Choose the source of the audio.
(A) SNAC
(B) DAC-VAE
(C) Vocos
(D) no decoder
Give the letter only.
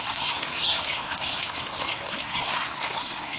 A